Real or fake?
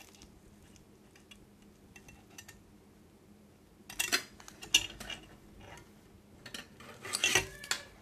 real